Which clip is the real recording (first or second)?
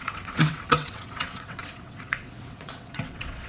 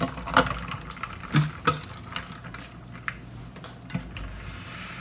second